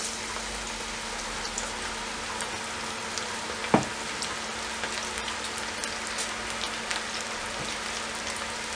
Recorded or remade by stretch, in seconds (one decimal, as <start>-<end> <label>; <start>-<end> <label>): 0.0-8.8 recorded